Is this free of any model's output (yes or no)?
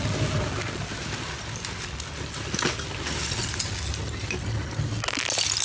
yes